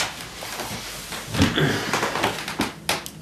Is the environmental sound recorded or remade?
recorded